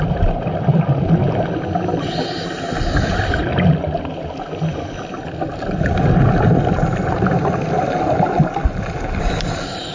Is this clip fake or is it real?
real